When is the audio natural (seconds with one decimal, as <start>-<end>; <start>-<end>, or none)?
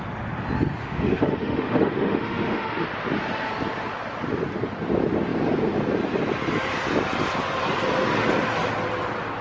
0.0-0.8; 2.8-9.4